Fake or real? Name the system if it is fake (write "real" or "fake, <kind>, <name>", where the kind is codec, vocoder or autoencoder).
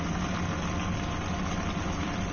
real